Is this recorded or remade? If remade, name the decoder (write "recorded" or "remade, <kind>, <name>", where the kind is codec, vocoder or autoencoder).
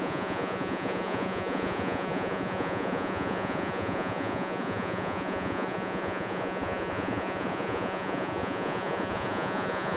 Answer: remade, vocoder, Vocos